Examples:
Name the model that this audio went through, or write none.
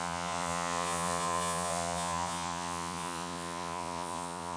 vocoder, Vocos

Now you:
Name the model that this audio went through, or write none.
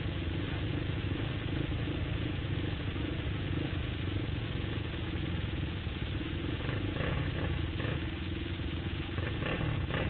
vocoder, Vocos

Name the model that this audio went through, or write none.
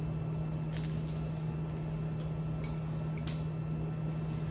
none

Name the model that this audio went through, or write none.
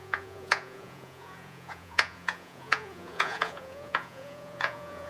vocoder, Vocos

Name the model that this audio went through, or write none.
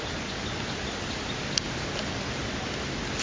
none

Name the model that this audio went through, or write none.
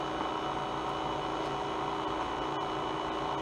none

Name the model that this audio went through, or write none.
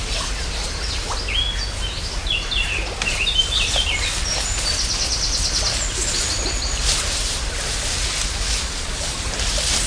none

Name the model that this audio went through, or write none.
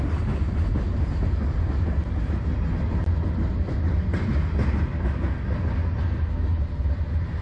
none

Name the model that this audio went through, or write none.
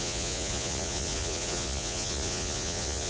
vocoder, Vocos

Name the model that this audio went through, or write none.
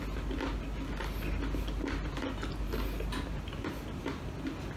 none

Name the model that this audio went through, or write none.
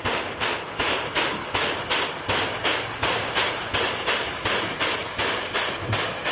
none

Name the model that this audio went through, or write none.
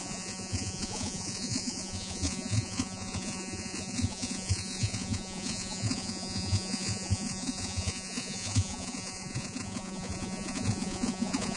vocoder, Vocos